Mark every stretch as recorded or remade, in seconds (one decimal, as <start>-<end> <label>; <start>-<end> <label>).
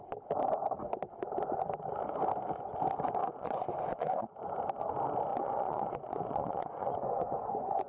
0.0-3.2 recorded; 3.2-4.2 remade; 4.2-5.3 recorded; 5.3-7.9 remade